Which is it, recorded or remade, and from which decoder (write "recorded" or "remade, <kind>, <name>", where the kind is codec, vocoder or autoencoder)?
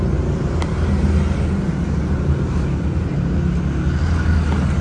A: recorded